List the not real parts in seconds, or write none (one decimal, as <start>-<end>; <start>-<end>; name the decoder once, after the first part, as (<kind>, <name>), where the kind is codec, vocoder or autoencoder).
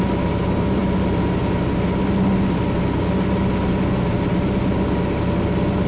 none